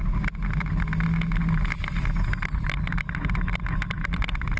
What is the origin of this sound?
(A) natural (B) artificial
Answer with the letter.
A